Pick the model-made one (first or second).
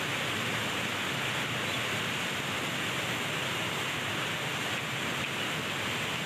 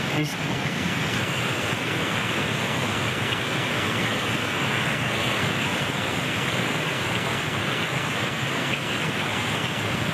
second